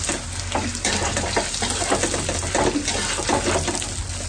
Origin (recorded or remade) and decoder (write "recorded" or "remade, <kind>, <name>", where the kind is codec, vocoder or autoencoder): recorded